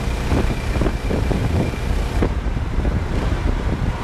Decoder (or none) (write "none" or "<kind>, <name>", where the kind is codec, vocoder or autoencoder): vocoder, BigVGAN v2